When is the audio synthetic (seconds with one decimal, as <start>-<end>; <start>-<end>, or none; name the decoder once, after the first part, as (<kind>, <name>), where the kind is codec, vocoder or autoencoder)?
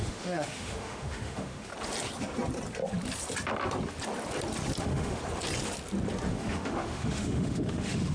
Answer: 0.0-1.7 (autoencoder, DAC-VAE); 4.8-5.2; 6.3-8.1